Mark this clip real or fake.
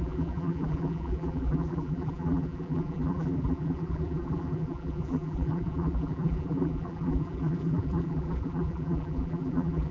fake